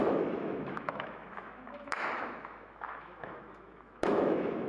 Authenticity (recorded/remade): remade